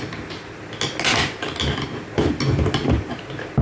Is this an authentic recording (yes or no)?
yes